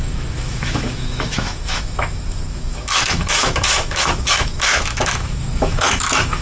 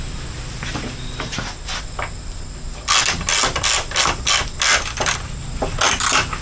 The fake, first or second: first